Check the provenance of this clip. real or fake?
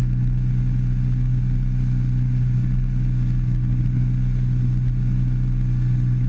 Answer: real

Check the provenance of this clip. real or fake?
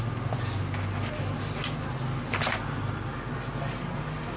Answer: real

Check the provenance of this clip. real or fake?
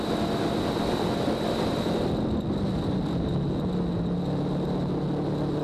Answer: real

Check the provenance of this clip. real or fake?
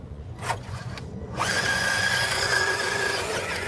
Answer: fake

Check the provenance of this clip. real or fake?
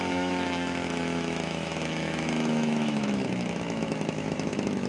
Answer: fake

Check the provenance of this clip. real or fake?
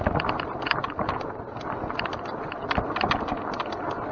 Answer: real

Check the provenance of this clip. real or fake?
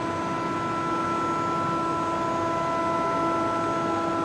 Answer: real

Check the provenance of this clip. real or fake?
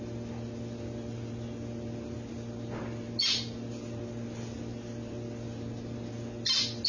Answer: real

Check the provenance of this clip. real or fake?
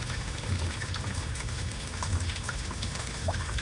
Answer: fake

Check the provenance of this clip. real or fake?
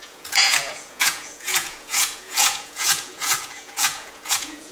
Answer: fake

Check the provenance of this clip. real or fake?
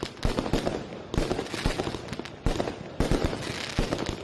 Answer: real